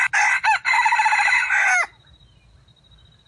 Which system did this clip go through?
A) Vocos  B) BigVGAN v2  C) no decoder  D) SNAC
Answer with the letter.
C